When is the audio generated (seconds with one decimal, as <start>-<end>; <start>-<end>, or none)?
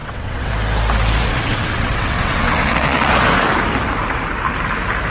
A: 0.0-0.5; 1.3-3.1